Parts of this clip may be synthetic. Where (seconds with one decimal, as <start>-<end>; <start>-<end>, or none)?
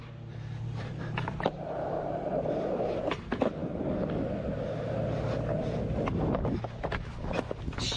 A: 0.0-3.6